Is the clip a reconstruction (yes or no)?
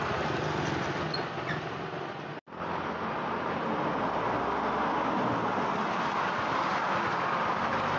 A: no